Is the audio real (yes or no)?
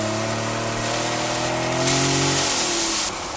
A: yes